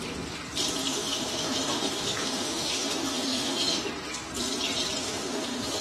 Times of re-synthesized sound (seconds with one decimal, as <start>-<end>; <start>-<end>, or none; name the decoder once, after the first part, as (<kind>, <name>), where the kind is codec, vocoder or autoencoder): 0.9-3.9 (autoencoder, DAC-VAE); 5.0-5.8